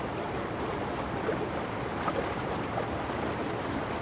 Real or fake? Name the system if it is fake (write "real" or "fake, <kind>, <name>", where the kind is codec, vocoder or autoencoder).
real